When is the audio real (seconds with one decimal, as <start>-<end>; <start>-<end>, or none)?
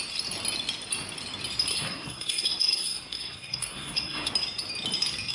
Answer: 0.0-1.7; 4.3-5.3